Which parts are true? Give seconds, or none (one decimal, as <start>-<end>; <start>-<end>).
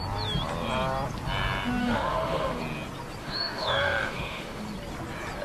0.0-1.8; 2.6-3.2; 4.6-5.4